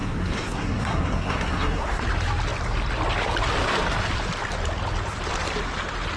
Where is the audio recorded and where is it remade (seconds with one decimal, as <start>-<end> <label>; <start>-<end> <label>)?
0.0-2.0 remade; 2.0-6.2 recorded